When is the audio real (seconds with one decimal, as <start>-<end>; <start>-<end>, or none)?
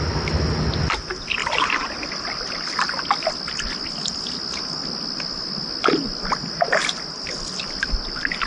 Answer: 0.0-1.4; 3.3-8.5